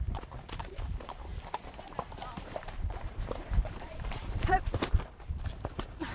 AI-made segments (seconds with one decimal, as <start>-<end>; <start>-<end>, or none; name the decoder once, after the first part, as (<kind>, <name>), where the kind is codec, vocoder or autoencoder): 0.0-1.3 (vocoder, BigVGAN v2); 2.3-6.1